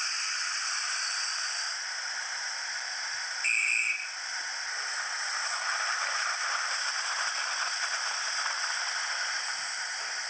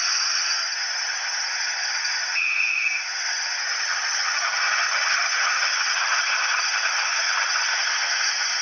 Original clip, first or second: first